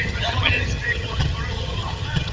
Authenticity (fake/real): fake